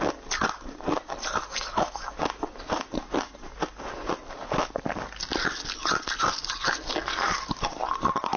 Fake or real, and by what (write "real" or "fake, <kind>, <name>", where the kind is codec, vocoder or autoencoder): real